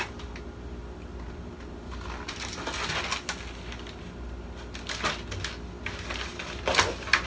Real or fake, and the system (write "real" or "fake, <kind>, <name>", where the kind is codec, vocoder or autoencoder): real